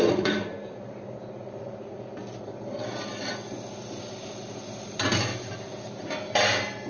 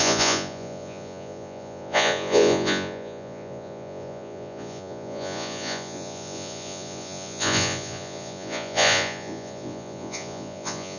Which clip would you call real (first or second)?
first